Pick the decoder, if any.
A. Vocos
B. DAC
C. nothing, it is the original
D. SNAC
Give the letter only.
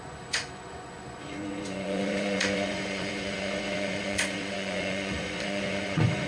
A